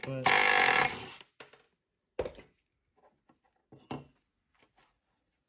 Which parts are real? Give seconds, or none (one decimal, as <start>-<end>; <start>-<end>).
0.0-5.5